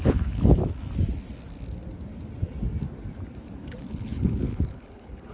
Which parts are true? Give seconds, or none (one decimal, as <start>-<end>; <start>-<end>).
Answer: 0.6-3.8